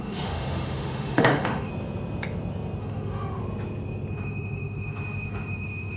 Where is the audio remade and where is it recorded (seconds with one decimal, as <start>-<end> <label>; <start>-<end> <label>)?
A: 0.0-1.7 remade; 1.7-2.8 recorded; 2.8-3.4 remade; 3.4-4.1 recorded; 4.1-6.0 remade